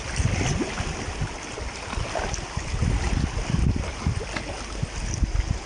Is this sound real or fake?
real